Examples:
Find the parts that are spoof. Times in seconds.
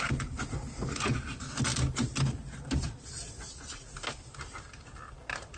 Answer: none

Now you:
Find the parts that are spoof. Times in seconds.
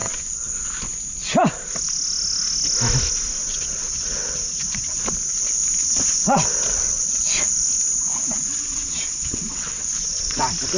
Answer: 0.0-0.5 (vocoder, WaveNeXt); 3.4-5.0; 5.8-7.5; 8.1-10.4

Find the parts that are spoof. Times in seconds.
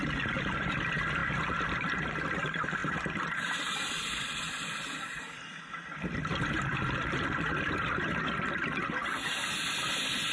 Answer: none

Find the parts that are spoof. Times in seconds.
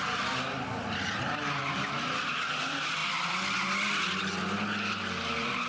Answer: none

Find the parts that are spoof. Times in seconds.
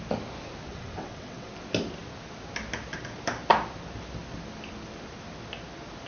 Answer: 0.7-1.5 (vocoder, WaveNeXt)